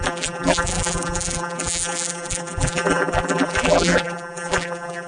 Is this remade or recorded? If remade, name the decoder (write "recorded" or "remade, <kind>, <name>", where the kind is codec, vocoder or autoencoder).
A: remade, vocoder, BigVGAN v2